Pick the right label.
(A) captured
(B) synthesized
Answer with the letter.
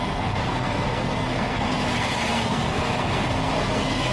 B